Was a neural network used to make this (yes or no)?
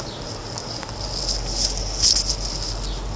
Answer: no